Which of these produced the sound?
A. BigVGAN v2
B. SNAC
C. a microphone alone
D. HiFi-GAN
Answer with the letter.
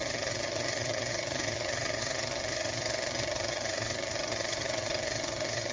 D